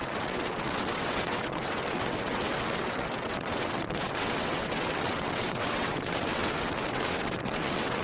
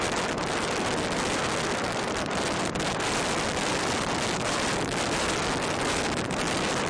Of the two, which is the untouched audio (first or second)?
second